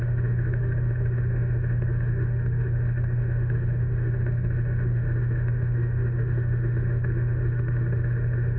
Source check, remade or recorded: remade